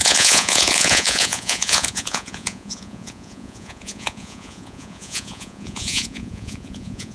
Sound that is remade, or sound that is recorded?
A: remade